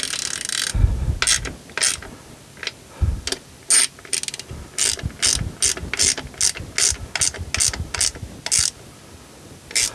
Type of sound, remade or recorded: recorded